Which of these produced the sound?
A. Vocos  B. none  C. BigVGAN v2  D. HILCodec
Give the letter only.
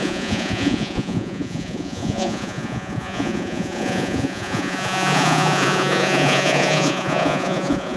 A